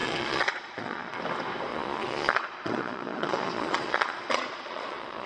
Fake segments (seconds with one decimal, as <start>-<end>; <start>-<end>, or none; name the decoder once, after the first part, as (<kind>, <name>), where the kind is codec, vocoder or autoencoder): 0.0-1.2 (vocoder, Vocos); 1.7-5.3